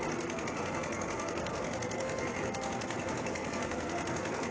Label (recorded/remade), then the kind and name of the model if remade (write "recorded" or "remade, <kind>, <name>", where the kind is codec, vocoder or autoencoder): remade, codec, SNAC